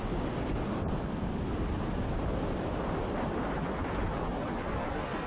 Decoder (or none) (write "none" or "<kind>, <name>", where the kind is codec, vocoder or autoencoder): none